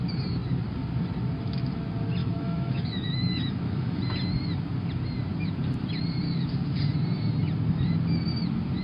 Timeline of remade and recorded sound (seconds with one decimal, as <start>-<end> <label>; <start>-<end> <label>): 0.0-2.2 recorded; 2.2-4.0 remade; 4.0-8.8 recorded